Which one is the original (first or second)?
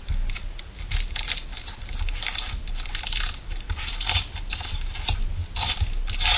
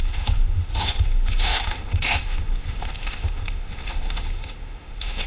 first